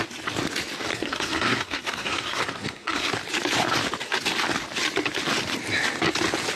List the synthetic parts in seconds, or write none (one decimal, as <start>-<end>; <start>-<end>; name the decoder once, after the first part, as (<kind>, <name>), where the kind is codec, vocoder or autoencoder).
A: 0.9-3.1 (codec, SNAC)